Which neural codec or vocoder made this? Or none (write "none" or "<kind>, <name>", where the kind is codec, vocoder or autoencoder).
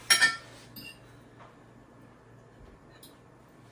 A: none